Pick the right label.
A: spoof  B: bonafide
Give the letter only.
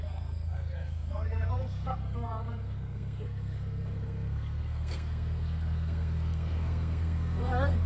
A